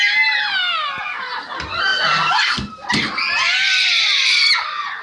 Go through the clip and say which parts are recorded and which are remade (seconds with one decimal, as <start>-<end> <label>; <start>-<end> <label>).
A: 0.0-5.0 recorded